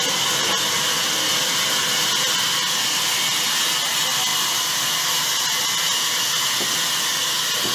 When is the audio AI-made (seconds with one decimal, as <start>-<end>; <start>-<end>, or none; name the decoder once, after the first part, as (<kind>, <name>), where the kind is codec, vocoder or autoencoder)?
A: none